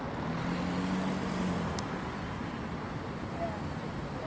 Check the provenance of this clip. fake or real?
real